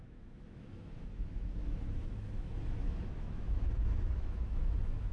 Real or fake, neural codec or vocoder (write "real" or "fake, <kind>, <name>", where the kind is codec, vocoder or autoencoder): fake, autoencoder, DAC-VAE